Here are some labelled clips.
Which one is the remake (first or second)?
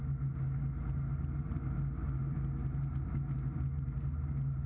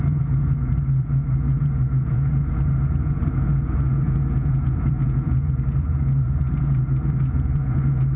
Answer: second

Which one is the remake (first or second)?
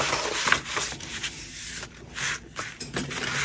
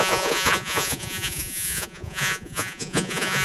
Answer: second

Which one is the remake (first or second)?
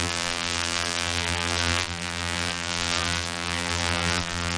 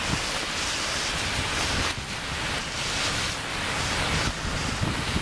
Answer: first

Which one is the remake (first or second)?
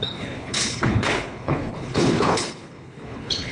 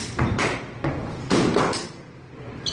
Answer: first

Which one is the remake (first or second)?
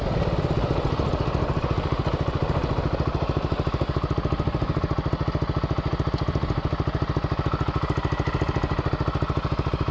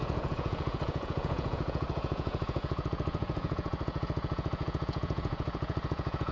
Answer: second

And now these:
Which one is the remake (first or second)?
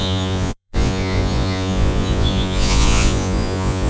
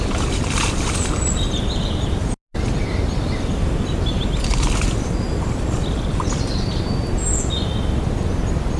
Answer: first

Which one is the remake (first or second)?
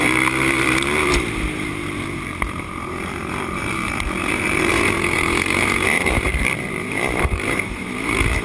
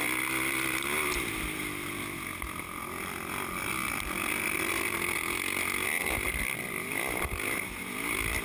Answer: first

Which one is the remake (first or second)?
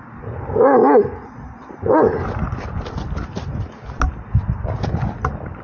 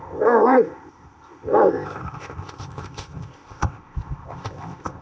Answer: second